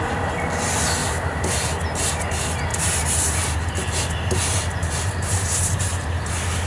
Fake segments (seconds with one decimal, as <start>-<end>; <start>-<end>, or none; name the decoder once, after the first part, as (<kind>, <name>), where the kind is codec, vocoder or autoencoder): 1.0-1.6 (vocoder, BigVGAN v2); 2.7-6.3